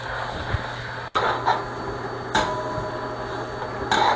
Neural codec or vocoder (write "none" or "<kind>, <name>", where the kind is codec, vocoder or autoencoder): none